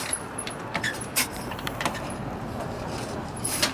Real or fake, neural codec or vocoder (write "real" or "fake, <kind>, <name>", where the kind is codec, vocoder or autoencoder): fake, vocoder, BigVGAN v2